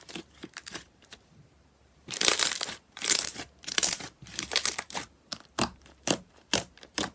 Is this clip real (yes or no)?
no